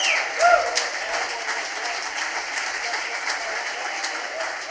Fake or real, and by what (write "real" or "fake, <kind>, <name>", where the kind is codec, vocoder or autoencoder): real